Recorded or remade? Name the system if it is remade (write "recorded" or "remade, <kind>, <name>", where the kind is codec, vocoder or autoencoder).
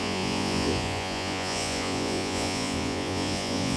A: remade, vocoder, Vocos